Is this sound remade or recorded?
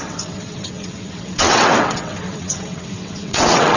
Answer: remade